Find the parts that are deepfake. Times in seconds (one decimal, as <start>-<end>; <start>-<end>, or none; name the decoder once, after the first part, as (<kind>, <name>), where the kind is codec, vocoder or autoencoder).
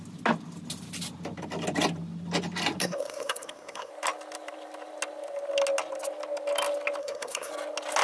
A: 2.8-3.9 (codec, SNAC); 7.0-7.5